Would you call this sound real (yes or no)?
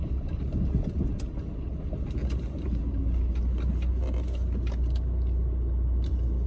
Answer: yes